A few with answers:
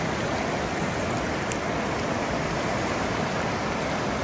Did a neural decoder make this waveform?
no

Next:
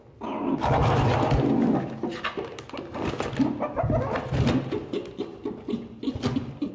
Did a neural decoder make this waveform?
no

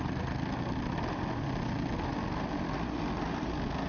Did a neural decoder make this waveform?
no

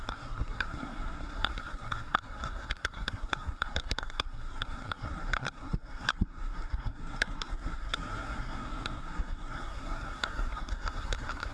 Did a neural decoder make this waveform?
yes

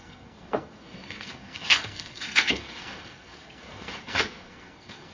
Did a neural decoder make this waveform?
yes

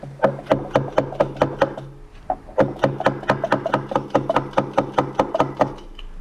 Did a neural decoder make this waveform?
no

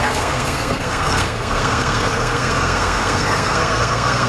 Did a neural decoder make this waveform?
yes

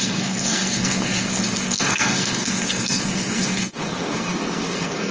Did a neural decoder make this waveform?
yes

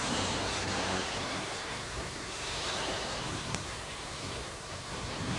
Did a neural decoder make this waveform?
yes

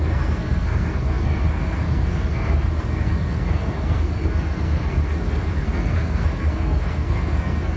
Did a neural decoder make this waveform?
yes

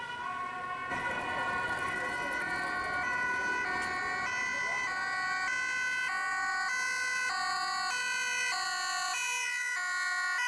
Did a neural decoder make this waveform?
no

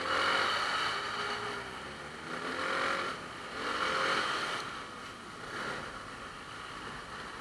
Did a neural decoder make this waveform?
no